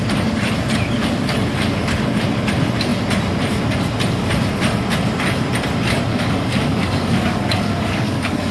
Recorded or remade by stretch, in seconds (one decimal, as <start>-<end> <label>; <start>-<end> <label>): 0.0-6.1 recorded; 6.1-8.5 remade